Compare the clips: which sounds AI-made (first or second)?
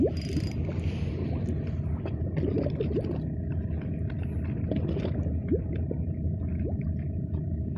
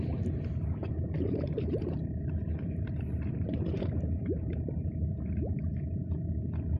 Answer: second